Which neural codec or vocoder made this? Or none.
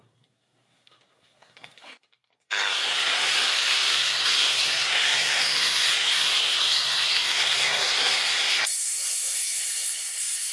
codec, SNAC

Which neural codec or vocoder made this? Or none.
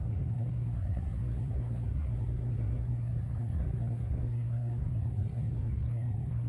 codec, SNAC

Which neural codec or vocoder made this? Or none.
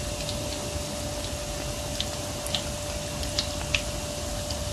none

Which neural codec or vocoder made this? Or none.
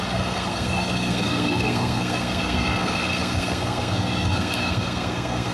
codec, SNAC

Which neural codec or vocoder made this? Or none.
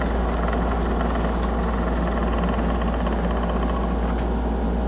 none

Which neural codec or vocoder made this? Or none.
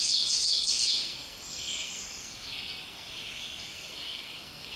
codec, SNAC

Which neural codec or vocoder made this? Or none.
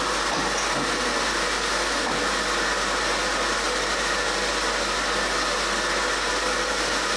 none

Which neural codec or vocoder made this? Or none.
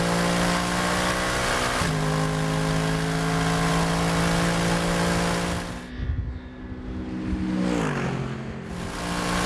none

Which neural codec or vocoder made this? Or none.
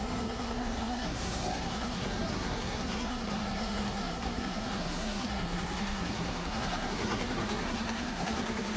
codec, SNAC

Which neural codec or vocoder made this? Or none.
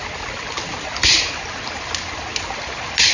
none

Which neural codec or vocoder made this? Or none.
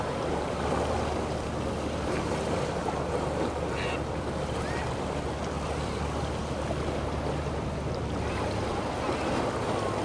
none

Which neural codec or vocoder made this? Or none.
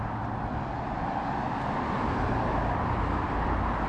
none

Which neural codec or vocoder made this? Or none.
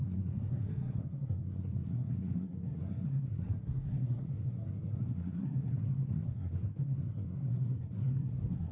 codec, SNAC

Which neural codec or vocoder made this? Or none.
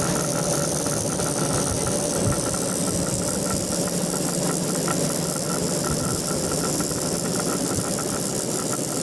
none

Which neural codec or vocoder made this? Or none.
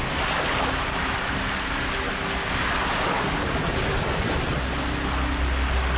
none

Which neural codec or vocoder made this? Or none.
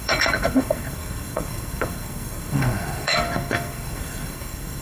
codec, SNAC